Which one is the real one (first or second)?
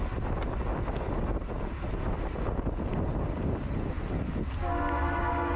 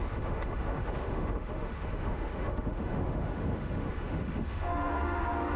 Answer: first